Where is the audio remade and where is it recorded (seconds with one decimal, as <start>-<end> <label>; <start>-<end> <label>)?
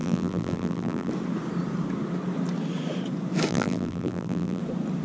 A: 0.0-1.1 remade; 1.1-3.5 recorded; 3.5-4.6 remade; 4.6-5.0 recorded